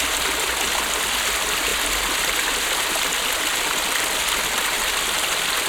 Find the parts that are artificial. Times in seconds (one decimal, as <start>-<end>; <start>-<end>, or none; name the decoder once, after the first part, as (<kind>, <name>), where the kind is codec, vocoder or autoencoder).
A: none